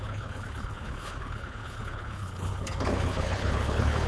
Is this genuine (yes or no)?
no